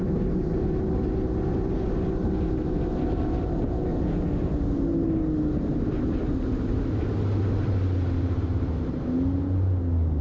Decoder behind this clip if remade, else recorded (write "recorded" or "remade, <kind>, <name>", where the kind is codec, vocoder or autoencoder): recorded